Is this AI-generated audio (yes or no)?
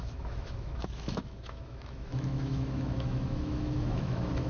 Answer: yes